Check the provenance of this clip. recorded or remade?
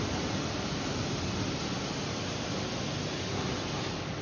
recorded